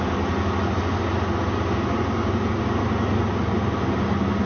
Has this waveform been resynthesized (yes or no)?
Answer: no